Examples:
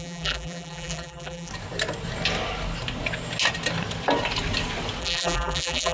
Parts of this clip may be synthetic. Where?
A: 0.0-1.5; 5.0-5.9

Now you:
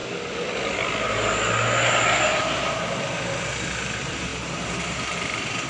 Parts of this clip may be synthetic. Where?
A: 2.4-5.7